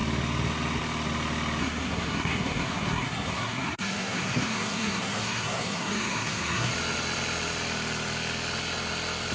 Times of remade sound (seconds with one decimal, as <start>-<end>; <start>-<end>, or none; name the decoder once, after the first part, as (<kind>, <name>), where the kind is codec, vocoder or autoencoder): 1.6-6.7 (codec, SNAC)